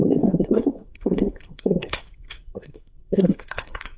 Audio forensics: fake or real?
fake